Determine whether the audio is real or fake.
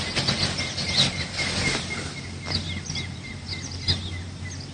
real